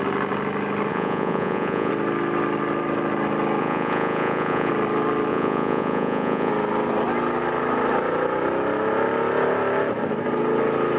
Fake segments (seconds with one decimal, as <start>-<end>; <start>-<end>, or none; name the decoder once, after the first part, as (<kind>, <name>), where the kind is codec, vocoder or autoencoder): 0.9-1.9 (vocoder, Vocos); 3.6-4.7; 5.3-6.5